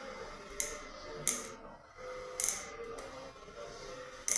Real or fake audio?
real